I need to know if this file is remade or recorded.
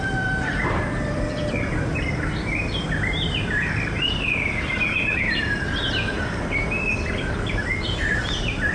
remade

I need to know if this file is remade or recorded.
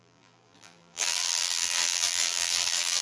remade